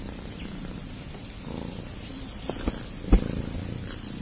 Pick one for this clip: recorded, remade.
recorded